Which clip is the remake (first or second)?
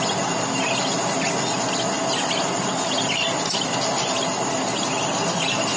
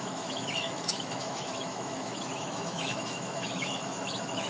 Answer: second